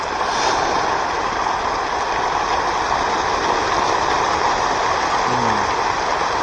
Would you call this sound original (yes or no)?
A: yes